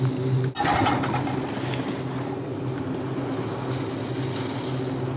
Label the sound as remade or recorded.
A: recorded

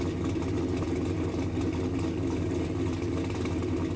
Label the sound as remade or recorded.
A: recorded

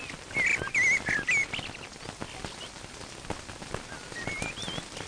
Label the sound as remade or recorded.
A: recorded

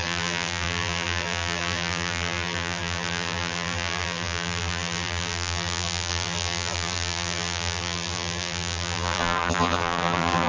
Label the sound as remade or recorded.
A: remade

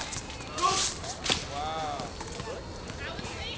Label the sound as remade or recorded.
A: recorded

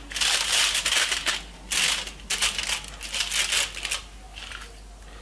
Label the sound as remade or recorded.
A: recorded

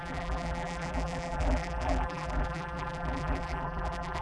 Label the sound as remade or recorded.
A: remade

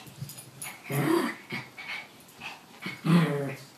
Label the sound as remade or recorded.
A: recorded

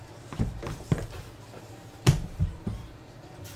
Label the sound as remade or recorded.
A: remade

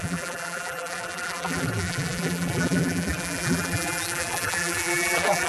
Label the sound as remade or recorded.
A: remade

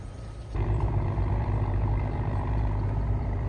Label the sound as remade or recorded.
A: remade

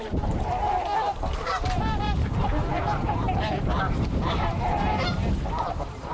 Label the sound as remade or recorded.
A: remade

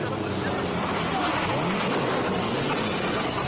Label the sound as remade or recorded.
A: recorded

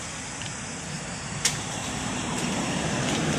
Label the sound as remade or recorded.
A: remade